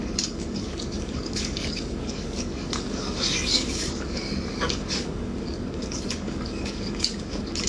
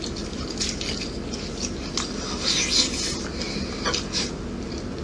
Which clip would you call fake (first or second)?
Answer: first